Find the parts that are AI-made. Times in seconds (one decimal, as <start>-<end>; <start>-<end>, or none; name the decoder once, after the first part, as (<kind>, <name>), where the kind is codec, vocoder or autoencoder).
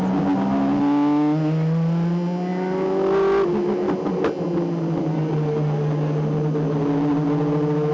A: none